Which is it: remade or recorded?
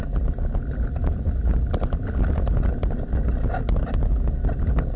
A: recorded